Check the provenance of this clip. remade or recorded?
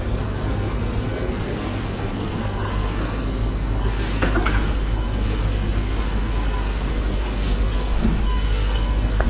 remade